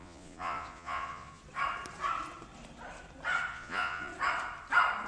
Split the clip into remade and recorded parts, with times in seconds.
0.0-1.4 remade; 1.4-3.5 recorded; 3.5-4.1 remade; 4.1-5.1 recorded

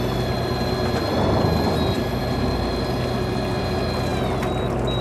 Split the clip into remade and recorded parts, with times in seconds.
0.0-5.0 recorded